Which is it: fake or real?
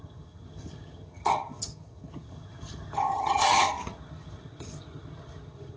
fake